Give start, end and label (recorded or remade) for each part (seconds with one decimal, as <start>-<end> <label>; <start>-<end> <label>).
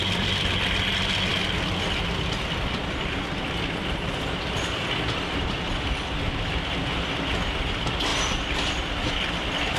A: 0.0-8.1 recorded; 8.1-8.6 remade; 8.6-9.8 recorded